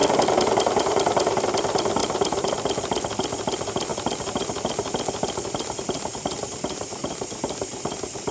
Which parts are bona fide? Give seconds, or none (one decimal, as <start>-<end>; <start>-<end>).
1.4-2.0; 2.5-6.4; 7.3-8.3